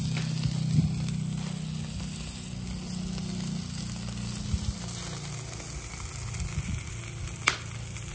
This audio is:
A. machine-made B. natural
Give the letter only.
B